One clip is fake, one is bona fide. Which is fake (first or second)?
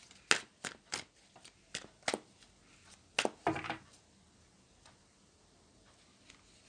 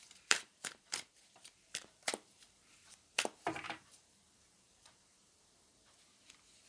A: second